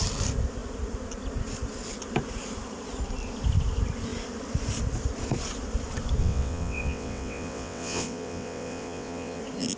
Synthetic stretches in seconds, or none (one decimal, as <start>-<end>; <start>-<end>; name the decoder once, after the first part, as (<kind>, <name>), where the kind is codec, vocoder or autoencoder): 6.2-9.4 (vocoder, WaveNeXt)